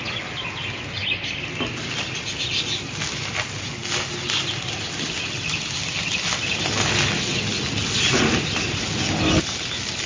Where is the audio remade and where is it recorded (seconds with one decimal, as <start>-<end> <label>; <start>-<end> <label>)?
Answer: 0.0-10.1 recorded